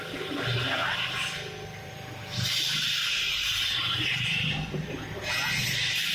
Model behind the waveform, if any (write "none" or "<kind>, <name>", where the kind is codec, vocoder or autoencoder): vocoder, BigVGAN v2